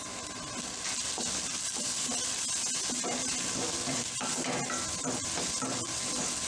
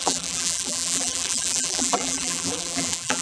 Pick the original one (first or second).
first